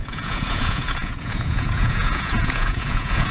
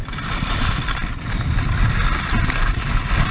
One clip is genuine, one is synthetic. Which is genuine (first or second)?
second